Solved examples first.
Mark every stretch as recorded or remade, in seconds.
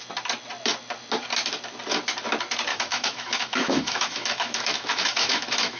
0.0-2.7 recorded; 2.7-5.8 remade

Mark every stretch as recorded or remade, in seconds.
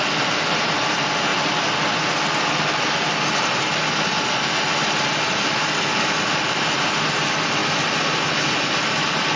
0.0-9.4 recorded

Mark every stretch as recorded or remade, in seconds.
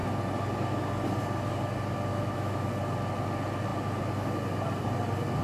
0.0-2.1 recorded; 2.1-2.7 remade; 2.7-5.4 recorded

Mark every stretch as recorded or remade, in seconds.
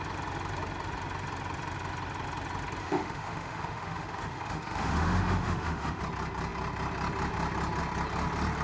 0.0-2.8 recorded; 2.8-6.0 remade; 6.0-8.6 recorded